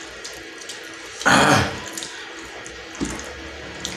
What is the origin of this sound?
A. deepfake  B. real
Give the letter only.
B